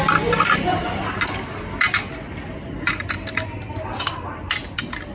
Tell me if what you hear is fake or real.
real